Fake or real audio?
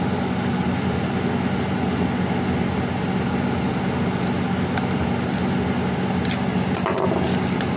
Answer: real